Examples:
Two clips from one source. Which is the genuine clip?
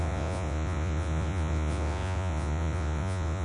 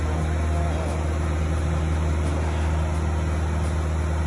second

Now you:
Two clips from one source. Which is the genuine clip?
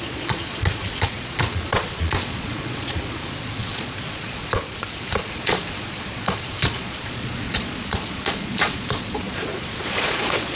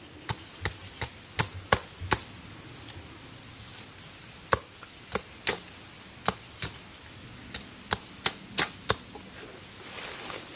second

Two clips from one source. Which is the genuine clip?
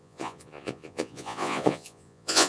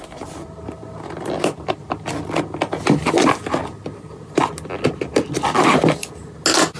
second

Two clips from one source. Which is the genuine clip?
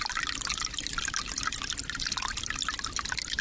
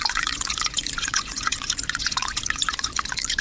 first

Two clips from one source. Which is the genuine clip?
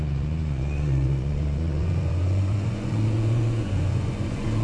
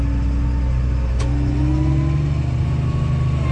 second